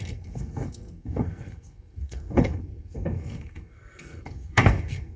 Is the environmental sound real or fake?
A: fake